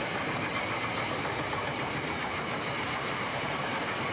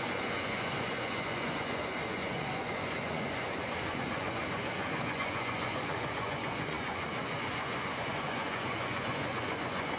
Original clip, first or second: first